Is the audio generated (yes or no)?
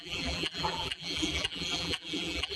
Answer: yes